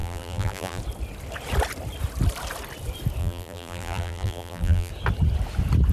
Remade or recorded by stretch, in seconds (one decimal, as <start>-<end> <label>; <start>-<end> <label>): 0.0-0.8 remade; 0.8-3.2 recorded; 3.2-4.9 remade; 4.9-5.9 recorded